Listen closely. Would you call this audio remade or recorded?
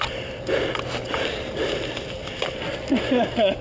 recorded